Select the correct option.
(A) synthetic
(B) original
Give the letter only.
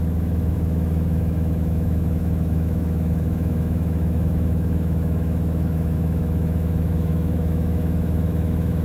A